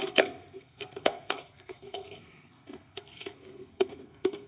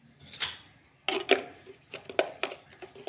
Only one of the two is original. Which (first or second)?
second